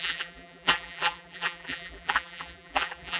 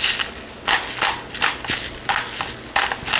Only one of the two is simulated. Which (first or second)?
first